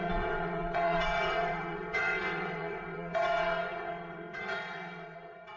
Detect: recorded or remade remade